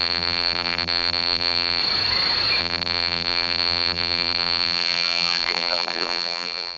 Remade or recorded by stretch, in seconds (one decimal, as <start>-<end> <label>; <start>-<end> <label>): 0.0-1.8 remade; 1.8-2.6 recorded; 2.6-6.8 remade